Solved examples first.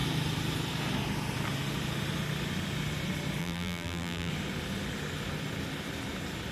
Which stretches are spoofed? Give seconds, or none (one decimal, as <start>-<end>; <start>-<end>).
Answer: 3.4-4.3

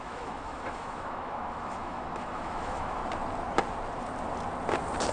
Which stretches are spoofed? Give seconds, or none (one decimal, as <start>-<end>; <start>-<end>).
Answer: 0.0-3.0

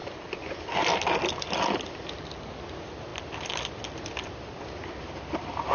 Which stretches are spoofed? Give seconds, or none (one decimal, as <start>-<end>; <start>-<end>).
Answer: none

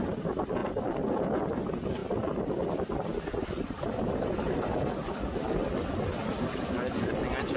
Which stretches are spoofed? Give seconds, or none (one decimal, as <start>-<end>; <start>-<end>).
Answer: none

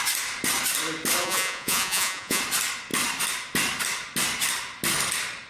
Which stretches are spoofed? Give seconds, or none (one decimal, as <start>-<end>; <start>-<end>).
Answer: 1.2-2.4

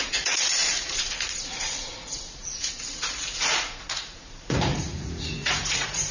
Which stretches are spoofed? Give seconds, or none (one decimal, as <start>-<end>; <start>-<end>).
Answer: 0.0-6.1

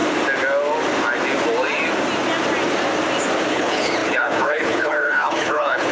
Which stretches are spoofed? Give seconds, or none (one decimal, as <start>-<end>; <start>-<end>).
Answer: 3.5-5.9